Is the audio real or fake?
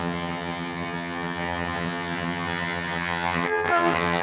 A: fake